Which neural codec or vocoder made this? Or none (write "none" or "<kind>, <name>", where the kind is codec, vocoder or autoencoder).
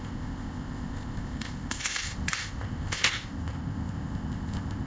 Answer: codec, ZipCodec